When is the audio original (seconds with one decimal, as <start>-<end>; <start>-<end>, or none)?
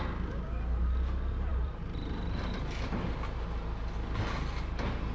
0.0-1.5; 3.1-5.1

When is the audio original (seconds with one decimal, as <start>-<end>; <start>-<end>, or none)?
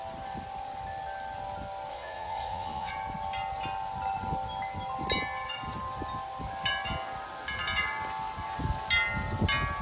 0.0-1.9; 2.9-9.8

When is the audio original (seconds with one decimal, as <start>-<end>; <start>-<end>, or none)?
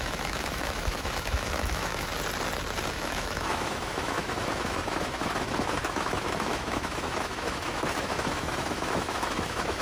2.1-2.9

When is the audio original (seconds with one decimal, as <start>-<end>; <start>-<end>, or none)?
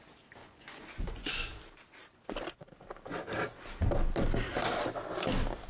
0.0-0.4; 1.6-5.7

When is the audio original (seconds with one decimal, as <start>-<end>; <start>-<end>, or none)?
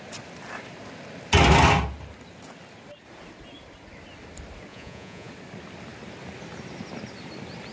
0.0-4.7; 5.3-7.7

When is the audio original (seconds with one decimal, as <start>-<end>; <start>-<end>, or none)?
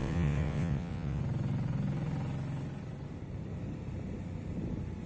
1.2-5.1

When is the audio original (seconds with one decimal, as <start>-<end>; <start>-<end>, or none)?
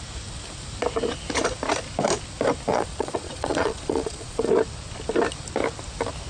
0.0-2.7; 4.5-6.3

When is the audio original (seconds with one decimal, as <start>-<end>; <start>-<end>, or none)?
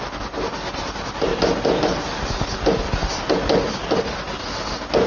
0.0-5.1